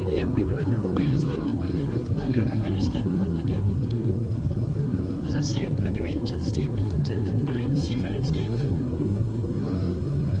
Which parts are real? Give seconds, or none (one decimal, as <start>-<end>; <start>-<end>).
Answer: none